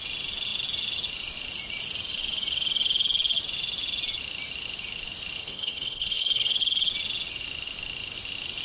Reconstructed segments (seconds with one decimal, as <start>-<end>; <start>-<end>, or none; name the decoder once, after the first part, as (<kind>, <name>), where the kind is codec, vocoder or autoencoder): 5.4-6.6 (codec, HILCodec)